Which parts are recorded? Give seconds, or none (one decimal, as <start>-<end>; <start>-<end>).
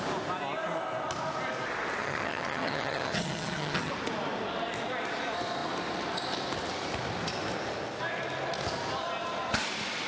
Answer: 0.0-2.0; 3.9-10.1